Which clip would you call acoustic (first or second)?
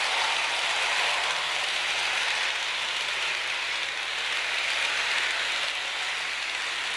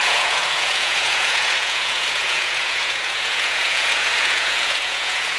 first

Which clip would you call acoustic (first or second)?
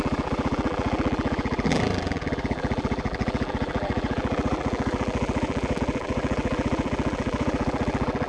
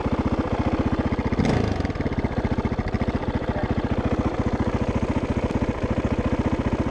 second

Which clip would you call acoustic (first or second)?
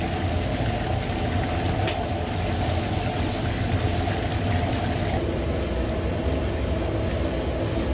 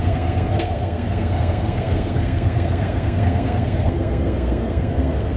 first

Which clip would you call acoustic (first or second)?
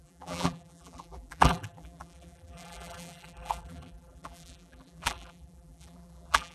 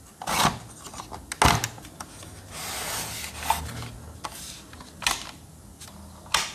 second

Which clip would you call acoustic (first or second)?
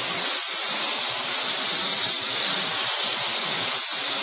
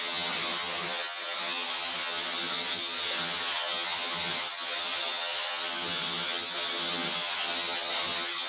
first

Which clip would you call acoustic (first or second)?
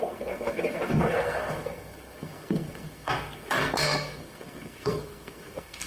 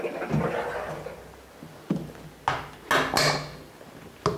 second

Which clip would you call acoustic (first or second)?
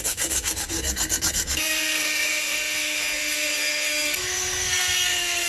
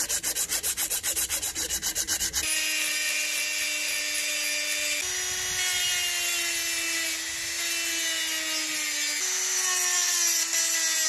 second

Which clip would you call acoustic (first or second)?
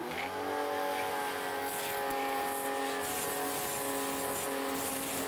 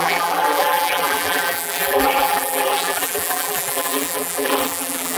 first